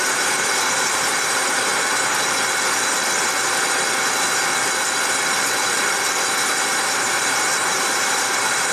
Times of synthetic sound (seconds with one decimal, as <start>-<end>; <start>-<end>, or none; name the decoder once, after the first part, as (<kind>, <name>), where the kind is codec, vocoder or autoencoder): 0.0-1.7 (vocoder, BigVGAN v2); 6.8-8.7